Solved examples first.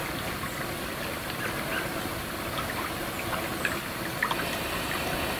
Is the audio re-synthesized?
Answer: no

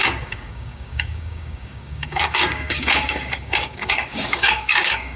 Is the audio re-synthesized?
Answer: yes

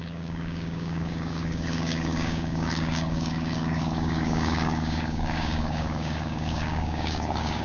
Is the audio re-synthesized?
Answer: yes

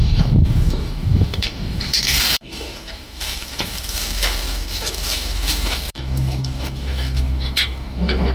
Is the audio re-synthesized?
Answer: yes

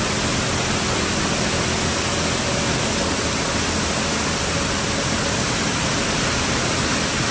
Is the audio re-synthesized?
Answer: no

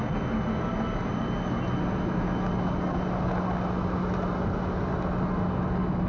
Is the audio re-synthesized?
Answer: no